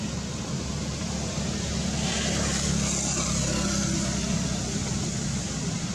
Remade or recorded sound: recorded